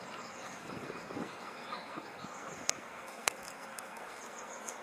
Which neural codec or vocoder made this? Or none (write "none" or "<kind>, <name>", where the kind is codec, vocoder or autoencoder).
codec, SNAC